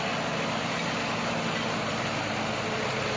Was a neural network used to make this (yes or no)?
no